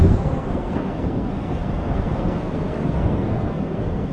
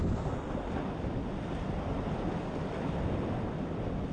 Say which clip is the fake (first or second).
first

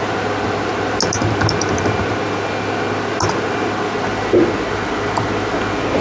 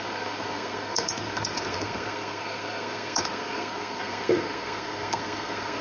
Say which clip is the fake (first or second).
second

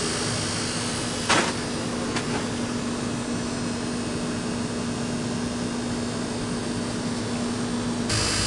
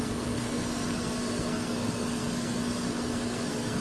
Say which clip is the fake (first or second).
second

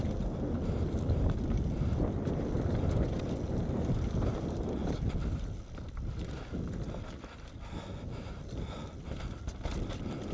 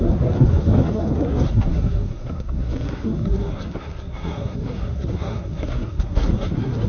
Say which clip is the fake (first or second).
second